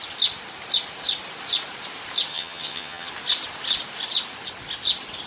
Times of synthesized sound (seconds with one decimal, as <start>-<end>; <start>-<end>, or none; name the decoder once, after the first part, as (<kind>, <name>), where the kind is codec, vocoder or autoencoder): 2.3-3.1 (vocoder, HiFi-GAN)